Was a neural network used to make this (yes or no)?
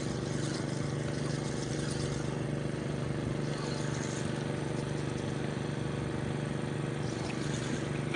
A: no